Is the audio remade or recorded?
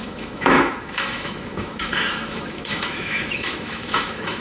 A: remade